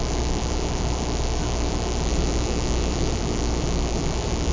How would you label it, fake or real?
fake